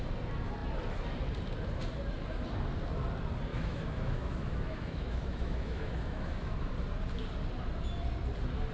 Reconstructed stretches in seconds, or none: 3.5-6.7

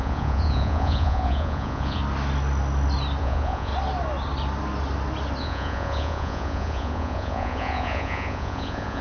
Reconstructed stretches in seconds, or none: 0.0-2.0; 3.2-3.7; 5.4-9.0

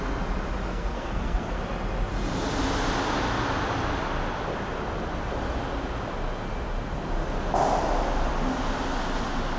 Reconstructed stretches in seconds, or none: 0.7-1.6

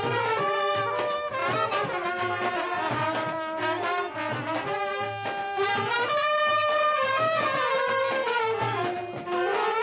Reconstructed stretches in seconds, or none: 1.4-3.6; 5.4-7.8

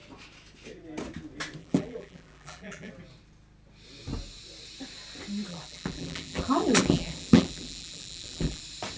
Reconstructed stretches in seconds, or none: 1.6-2.9; 5.5-8.6

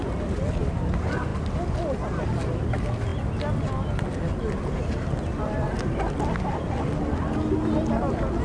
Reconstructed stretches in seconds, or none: none

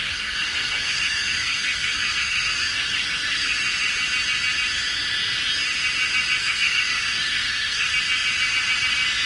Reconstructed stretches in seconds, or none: 0.0-3.5; 6.4-7.9

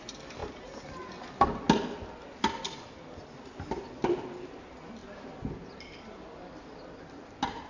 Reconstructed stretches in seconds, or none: none